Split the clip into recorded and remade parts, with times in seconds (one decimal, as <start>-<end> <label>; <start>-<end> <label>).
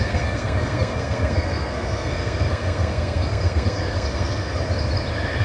0.0-4.5 remade; 4.5-5.4 recorded